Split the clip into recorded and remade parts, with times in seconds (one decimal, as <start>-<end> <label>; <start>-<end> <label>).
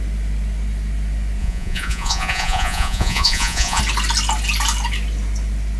0.0-1.4 recorded; 1.4-3.8 remade; 3.8-5.8 recorded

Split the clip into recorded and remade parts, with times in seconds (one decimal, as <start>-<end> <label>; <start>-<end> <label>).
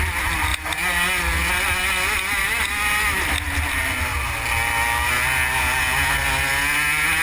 0.0-7.2 recorded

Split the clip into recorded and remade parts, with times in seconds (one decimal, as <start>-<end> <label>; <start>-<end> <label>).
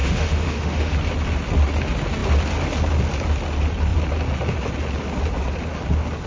0.0-0.9 remade; 0.9-6.3 recorded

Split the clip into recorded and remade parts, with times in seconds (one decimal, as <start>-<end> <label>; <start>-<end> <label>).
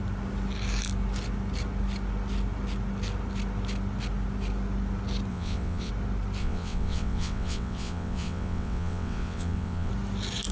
0.0-5.3 recorded; 5.3-5.9 remade; 5.9-6.4 recorded; 6.4-9.9 remade; 9.9-10.5 recorded